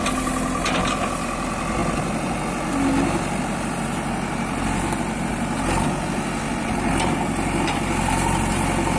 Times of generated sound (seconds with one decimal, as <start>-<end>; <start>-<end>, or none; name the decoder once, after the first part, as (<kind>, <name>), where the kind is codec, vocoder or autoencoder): none